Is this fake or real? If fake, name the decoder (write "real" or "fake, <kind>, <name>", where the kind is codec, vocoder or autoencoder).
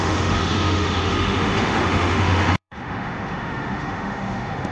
fake, autoencoder, DAC-VAE